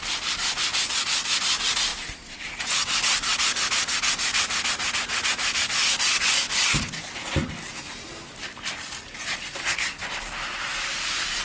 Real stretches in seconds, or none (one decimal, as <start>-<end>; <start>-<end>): 0.0-1.9; 2.5-11.4